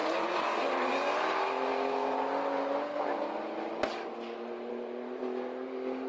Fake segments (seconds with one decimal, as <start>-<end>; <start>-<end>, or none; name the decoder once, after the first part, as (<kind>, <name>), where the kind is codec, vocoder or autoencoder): 0.0-0.6 (vocoder, Vocos)

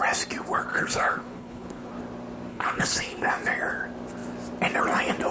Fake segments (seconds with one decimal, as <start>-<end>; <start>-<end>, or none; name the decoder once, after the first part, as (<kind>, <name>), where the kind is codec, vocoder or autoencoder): 0.7-1.9 (codec, HILCodec); 2.5-3.3